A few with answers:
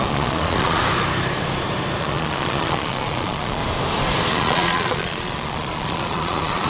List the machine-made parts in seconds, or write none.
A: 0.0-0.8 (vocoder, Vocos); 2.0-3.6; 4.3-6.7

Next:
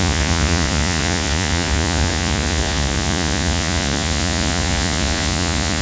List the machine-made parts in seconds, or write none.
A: 0.0-5.8 (vocoder, Vocos)

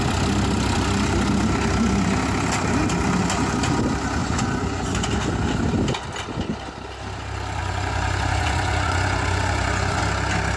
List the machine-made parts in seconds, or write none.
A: 4.2-5.1 (vocoder, Vocos); 7.6-10.0

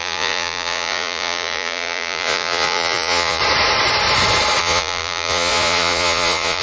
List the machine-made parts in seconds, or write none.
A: 0.0-3.4 (vocoder, Vocos); 4.6-6.6

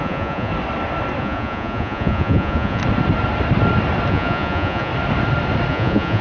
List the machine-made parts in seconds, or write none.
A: 0.0-0.5 (vocoder, Vocos); 1.2-2.8; 4.1-4.9; 5.7-6.2

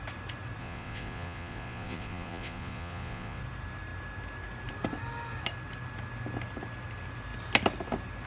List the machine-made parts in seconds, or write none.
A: 0.6-3.4 (vocoder, Vocos)

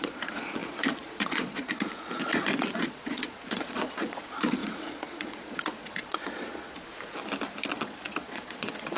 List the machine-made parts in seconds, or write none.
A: 0.0-6.8 (vocoder, Vocos); 7.7-9.0